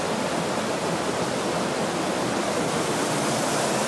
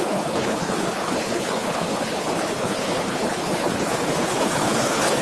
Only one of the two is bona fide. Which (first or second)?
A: first